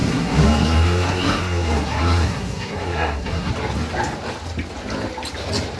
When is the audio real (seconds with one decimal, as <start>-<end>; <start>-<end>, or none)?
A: 3.5-5.8